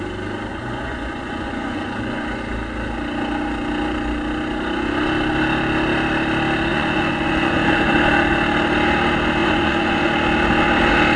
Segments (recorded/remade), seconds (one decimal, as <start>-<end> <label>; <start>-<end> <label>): 0.0-0.5 recorded; 0.5-2.4 remade; 2.4-6.7 recorded; 6.7-7.9 remade; 7.9-9.4 recorded; 9.4-10.0 remade; 10.0-11.2 recorded